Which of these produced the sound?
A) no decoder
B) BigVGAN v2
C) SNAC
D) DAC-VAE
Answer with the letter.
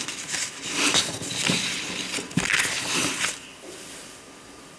A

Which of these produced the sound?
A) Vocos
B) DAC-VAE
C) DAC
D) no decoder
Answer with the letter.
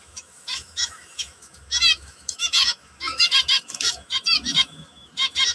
B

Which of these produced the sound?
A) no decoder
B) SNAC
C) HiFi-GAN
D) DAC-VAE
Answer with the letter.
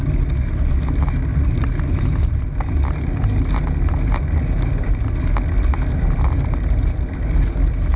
A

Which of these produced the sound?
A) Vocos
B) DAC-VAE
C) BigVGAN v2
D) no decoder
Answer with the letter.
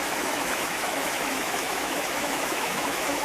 B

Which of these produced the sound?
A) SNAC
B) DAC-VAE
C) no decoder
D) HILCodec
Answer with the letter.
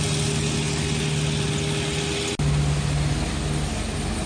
C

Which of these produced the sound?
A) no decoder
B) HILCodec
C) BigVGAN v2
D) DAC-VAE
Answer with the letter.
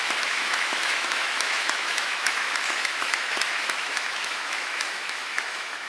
D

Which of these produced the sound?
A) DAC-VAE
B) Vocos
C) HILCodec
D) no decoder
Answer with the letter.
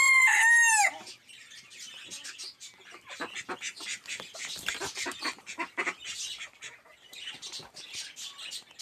D